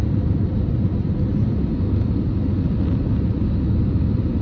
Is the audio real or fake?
real